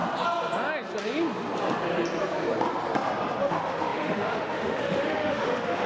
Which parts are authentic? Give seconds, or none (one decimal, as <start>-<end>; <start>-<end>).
0.0-3.5